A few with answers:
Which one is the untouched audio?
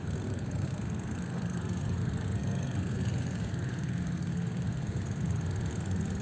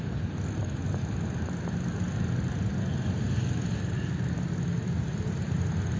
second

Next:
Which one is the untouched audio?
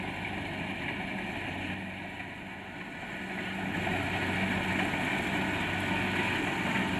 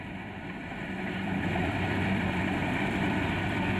first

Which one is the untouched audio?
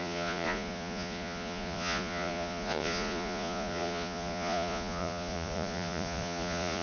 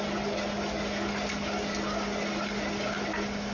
second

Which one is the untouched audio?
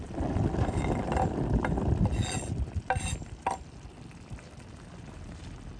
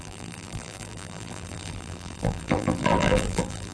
first